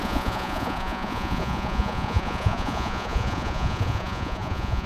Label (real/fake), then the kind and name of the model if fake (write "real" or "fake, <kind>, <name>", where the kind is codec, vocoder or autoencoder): fake, vocoder, Vocos